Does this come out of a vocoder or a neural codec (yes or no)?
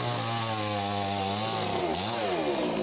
no